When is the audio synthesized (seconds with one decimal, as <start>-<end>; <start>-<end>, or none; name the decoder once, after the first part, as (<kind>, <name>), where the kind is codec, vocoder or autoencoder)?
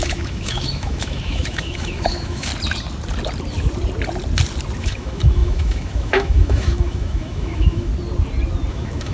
0.0-2.5 (autoencoder, DAC-VAE); 4.8-7.9; 8.7-9.1